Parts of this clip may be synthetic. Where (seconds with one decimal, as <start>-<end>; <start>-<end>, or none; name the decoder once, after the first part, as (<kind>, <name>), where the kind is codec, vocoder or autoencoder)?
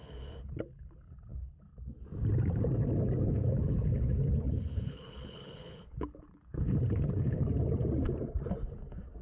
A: 0.0-1.6 (codec, HILCodec); 3.2-7.4